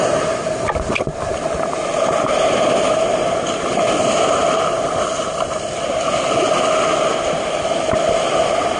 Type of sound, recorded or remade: recorded